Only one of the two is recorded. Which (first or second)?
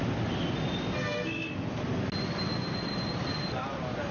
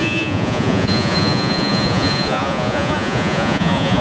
first